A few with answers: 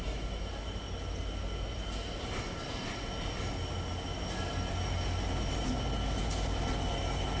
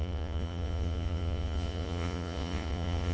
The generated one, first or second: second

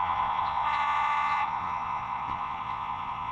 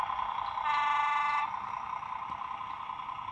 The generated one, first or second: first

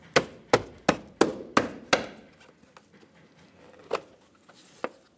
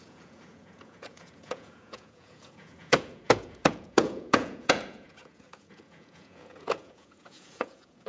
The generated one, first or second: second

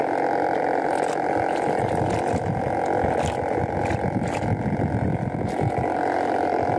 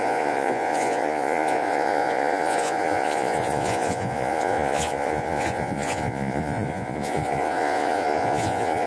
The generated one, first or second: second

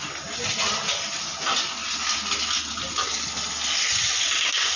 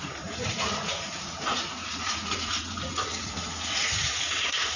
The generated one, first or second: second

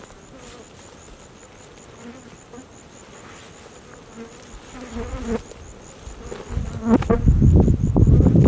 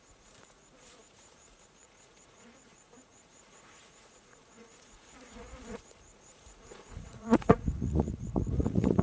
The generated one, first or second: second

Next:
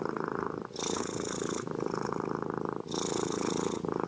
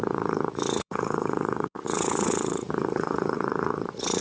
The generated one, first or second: second